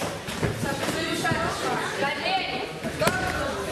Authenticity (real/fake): real